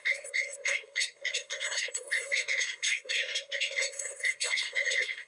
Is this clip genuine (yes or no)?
no